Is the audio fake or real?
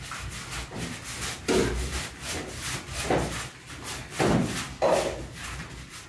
real